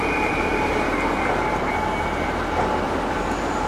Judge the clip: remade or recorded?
remade